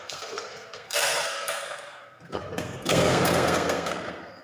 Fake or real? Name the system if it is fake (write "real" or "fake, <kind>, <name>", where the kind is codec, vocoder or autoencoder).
fake, codec, SNAC